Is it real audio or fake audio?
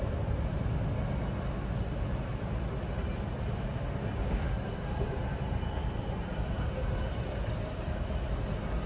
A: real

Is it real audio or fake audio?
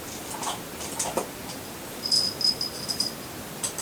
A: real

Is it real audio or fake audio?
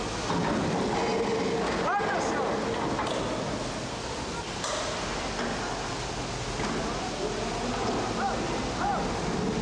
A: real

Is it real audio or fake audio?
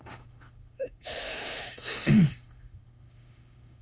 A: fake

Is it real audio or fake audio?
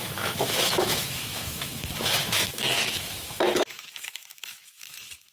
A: fake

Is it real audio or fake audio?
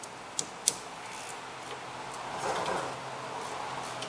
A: real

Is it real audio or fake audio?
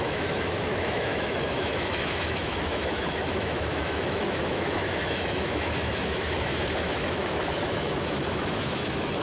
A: fake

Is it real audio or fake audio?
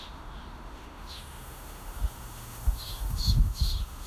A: fake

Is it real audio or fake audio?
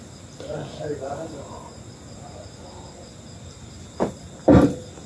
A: real